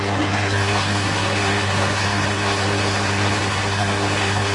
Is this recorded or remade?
remade